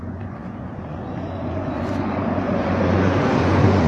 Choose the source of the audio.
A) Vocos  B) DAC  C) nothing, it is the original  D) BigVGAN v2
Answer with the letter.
A